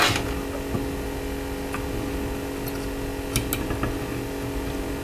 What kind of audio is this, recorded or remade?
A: recorded